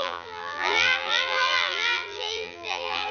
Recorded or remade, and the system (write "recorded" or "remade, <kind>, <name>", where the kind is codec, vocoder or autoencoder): remade, vocoder, BigVGAN v2